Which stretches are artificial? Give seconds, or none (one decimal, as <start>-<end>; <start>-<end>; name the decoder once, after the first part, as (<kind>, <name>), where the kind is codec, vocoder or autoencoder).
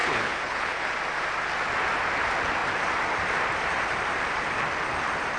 0.0-0.9 (codec, HILCodec)